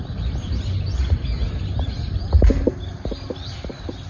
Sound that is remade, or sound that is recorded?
recorded